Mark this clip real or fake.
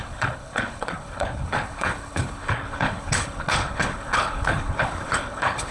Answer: fake